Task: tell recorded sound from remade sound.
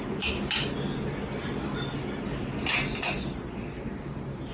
recorded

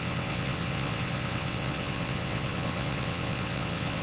remade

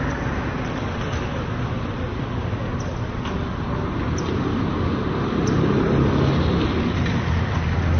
recorded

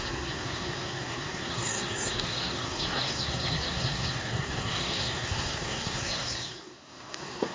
remade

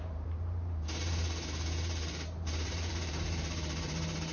remade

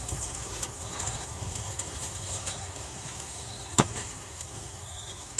remade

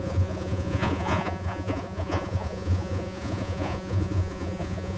remade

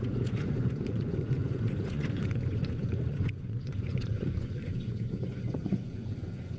remade